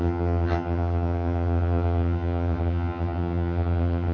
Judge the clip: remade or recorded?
remade